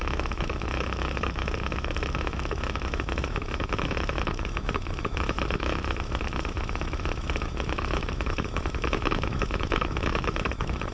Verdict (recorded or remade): remade